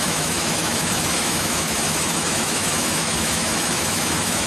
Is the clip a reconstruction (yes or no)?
yes